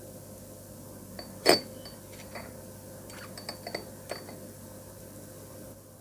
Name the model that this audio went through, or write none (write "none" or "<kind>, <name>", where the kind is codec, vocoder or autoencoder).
none